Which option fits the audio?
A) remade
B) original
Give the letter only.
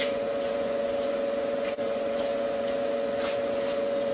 A